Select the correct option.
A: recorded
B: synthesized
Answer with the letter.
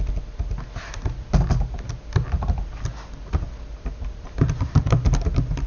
A